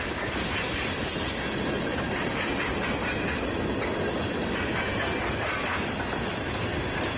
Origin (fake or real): real